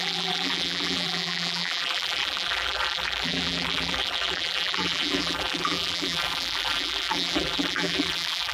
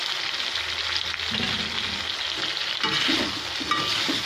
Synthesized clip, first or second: first